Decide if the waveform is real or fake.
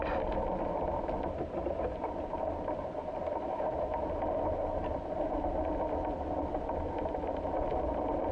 real